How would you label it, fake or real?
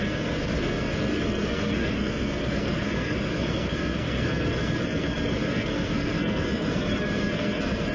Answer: fake